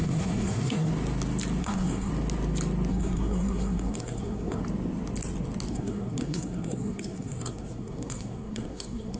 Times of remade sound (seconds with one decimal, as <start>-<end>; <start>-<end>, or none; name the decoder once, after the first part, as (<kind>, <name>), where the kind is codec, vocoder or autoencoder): 0.0-0.9 (codec, SNAC); 1.6-2.1; 2.9-4.6; 5.7-9.2